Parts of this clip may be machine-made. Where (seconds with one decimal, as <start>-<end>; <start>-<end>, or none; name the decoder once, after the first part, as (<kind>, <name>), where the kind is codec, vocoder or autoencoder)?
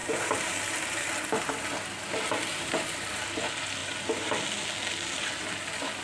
0.0-1.1 (vocoder, BigVGAN v2); 2.5-3.1